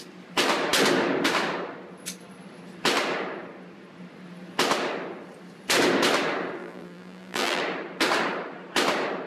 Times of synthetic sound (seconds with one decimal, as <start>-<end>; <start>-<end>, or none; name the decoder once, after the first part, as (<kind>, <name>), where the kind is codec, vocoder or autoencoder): 6.6-7.6 (vocoder, BigVGAN v2)